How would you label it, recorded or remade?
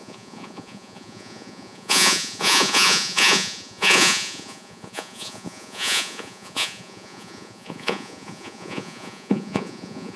remade